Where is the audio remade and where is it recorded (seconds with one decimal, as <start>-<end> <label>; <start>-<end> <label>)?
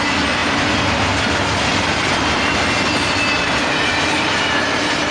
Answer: 0.0-5.1 recorded